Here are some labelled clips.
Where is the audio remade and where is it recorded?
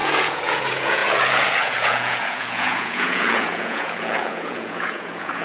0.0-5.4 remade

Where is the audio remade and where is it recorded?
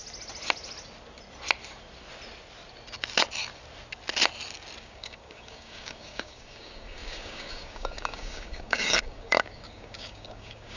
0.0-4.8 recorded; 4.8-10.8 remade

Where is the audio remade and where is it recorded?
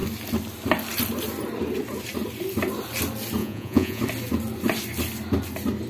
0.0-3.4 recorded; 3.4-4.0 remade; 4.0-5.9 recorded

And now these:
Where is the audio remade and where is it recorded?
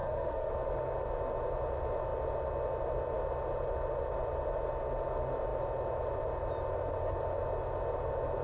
0.0-0.5 remade; 0.5-8.4 recorded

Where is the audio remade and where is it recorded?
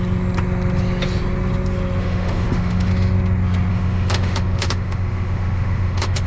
0.0-2.0 recorded; 2.0-2.9 remade; 2.9-3.7 recorded; 3.7-6.3 remade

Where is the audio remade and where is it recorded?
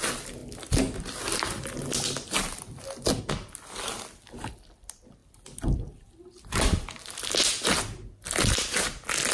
0.0-9.3 recorded